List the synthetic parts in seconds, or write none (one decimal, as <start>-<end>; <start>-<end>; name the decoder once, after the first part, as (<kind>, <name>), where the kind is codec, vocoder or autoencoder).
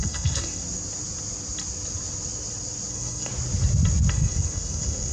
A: 0.0-0.6 (codec, SNAC); 2.9-3.3; 4.1-5.1